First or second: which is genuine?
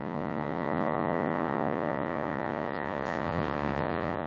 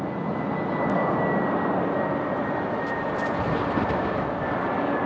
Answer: second